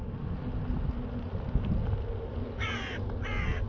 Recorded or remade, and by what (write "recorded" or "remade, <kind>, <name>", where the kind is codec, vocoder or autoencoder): recorded